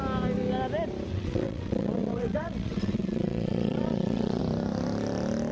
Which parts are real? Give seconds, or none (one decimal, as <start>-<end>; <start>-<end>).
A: 0.0-1.1; 4.4-5.5